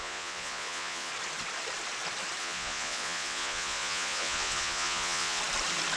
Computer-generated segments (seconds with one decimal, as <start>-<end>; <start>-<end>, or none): 0.0-1.1; 2.4-5.4